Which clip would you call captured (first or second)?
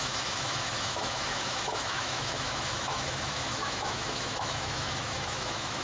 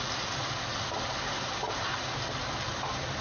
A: second